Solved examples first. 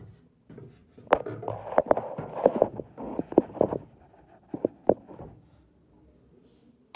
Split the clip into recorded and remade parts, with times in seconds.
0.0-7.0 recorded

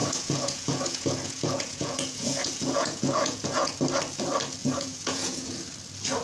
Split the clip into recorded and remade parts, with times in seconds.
0.0-3.7 remade; 3.7-4.6 recorded; 4.6-5.6 remade; 5.6-6.2 recorded

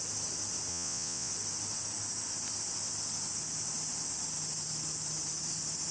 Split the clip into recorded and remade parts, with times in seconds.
0.0-0.7 recorded; 0.7-1.3 remade; 1.3-5.9 recorded

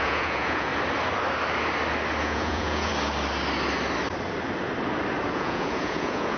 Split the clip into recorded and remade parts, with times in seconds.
0.0-0.7 remade; 0.7-2.2 recorded; 2.2-2.9 remade; 2.9-5.3 recorded; 5.3-6.4 remade

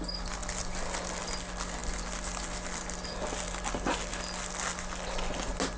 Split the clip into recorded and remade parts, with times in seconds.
0.0-5.8 recorded

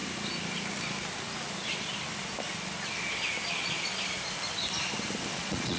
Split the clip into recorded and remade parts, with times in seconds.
0.0-3.5 recorded; 3.5-3.9 remade; 3.9-5.3 recorded; 5.3-5.8 remade